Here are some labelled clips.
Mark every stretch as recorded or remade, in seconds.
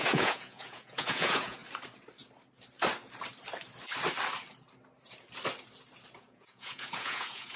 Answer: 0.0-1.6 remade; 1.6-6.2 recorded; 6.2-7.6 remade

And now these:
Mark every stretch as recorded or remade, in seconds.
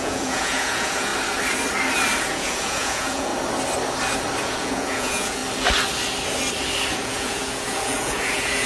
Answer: 0.0-1.1 remade; 1.1-2.2 recorded; 2.2-3.3 remade; 3.3-4.4 recorded; 4.4-5.4 remade; 5.4-6.9 recorded; 6.9-8.7 remade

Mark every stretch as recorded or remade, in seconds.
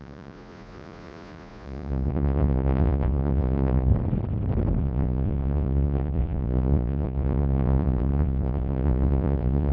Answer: 0.0-3.9 remade; 3.9-4.8 recorded; 4.8-9.7 remade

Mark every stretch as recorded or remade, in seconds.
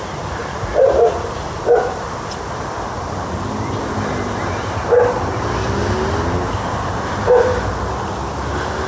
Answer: 0.0-8.9 recorded